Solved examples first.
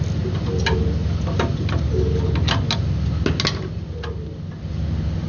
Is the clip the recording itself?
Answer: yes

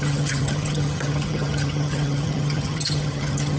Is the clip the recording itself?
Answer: no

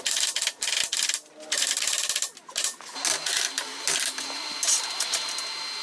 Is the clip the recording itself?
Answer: yes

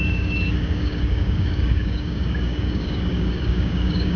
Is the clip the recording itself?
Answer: no